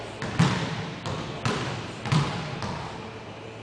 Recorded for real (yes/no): no